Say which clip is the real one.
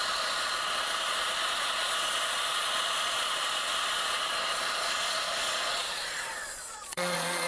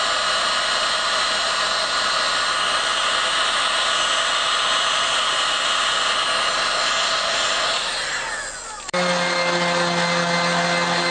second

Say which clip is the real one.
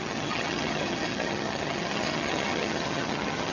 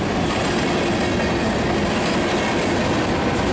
second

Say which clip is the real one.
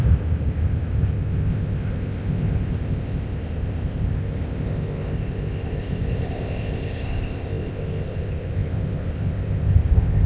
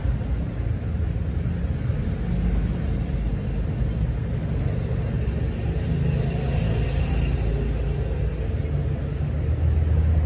second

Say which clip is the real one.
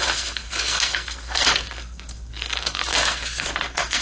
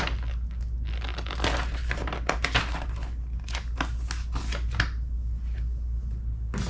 second